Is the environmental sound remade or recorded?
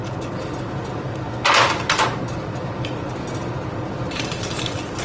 recorded